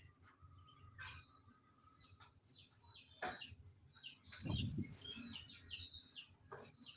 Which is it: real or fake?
real